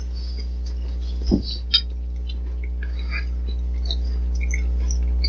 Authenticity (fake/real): real